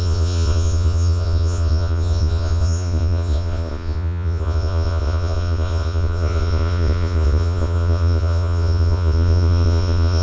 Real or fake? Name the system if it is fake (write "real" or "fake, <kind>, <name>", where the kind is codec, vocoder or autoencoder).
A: fake, vocoder, Vocos